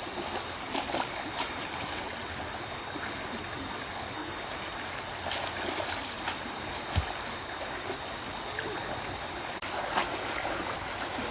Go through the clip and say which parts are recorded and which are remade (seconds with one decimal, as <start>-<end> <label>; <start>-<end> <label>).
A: 0.0-1.8 recorded; 1.8-2.5 remade; 2.5-11.3 recorded